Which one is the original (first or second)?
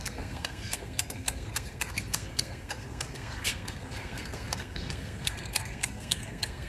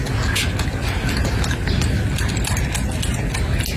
second